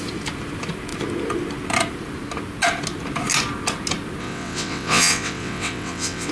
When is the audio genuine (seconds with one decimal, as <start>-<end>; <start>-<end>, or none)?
0.0-4.2